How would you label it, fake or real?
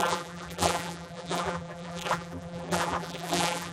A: fake